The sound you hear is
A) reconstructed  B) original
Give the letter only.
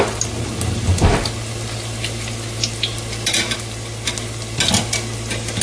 B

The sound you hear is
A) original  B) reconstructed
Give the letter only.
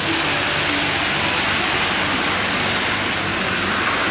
A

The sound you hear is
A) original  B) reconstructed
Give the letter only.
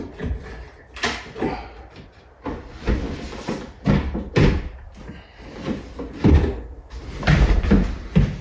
A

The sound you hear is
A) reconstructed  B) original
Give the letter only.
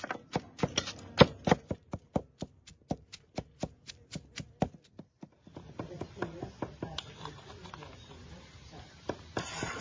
B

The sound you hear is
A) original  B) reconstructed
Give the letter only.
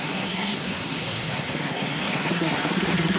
B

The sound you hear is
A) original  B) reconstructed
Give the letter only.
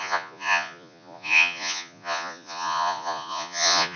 B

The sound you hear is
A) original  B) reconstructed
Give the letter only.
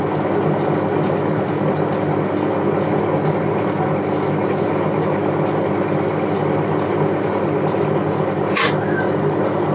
A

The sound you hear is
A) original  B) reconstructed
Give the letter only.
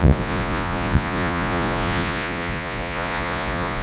B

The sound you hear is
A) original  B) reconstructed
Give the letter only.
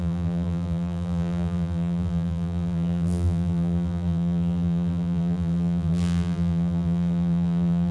B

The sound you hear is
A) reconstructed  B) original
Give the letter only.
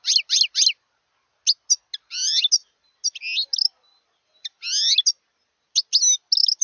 B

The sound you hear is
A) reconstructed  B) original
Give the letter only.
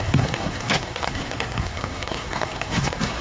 A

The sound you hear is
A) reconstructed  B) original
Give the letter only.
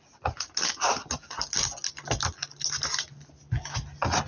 B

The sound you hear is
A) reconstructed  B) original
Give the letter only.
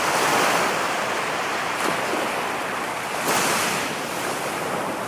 A